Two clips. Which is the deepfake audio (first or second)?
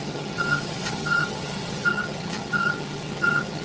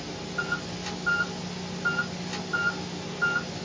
first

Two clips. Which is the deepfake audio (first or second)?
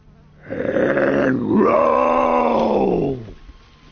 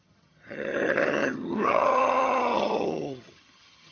second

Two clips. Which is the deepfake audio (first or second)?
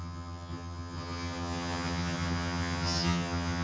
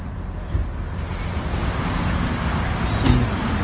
first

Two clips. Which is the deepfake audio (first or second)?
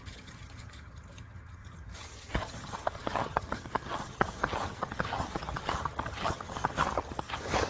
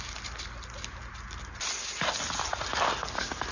first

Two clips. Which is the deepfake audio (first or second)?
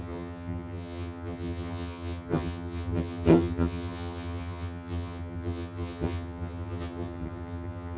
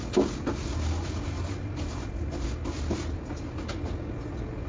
first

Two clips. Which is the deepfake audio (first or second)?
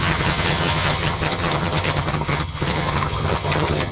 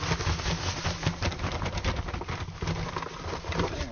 first